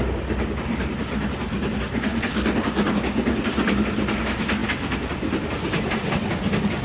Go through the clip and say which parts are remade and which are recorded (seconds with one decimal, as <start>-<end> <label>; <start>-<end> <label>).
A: 0.0-6.8 recorded